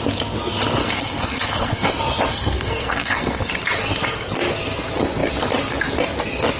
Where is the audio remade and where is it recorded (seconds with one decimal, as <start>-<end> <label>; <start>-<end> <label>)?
0.0-0.8 recorded; 0.8-1.9 remade; 1.9-2.3 recorded; 2.3-3.5 remade; 3.5-6.6 recorded